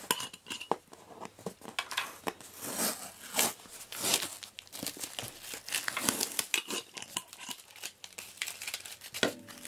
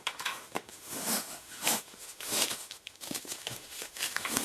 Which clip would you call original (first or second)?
first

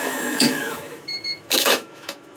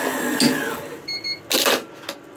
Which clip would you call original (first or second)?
second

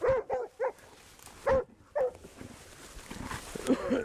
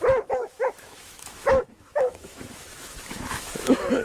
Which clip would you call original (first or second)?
first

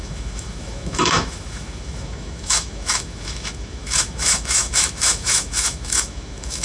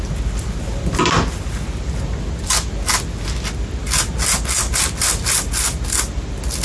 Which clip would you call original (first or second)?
second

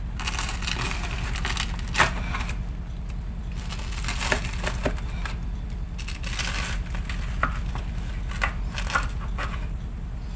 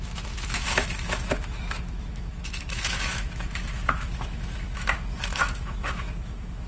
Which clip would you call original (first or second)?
first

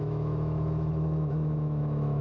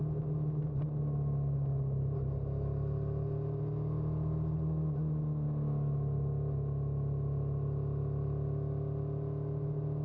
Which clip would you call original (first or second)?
second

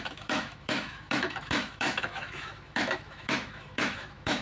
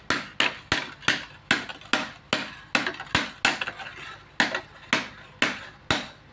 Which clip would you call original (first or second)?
second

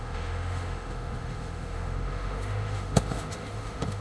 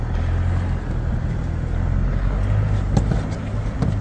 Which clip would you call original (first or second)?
second